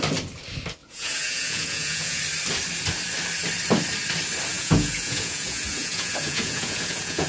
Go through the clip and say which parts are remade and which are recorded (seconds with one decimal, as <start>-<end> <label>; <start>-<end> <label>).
0.0-0.8 recorded; 0.8-2.2 remade; 2.2-4.5 recorded; 4.5-7.3 remade